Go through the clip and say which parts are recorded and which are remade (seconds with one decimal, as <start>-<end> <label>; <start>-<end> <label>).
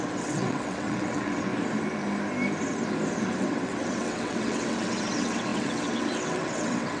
0.0-1.5 remade; 1.5-3.2 recorded; 3.2-7.0 remade